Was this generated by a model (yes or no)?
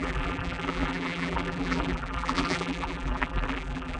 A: yes